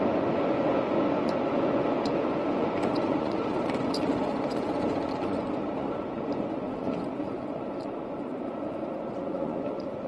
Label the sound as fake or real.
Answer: fake